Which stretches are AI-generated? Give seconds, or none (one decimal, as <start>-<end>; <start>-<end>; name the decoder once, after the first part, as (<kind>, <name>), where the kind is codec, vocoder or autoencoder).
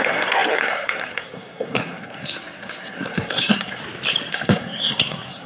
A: 0.0-3.8 (codec, SNAC); 4.3-5.5